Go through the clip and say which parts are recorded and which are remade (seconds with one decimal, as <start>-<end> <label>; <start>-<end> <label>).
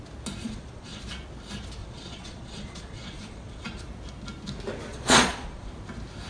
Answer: 0.0-0.4 recorded; 0.4-1.0 remade; 1.0-1.8 recorded; 1.8-3.8 remade; 3.8-4.9 recorded; 4.9-5.7 remade; 5.7-6.3 recorded